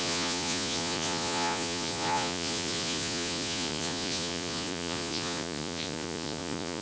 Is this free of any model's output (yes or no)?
no